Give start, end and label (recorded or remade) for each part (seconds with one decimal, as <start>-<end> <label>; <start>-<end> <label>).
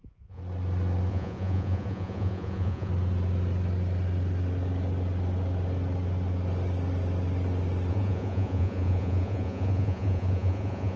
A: 0.0-0.4 remade; 0.4-1.1 recorded; 1.1-2.9 remade; 2.9-7.9 recorded; 7.9-11.0 remade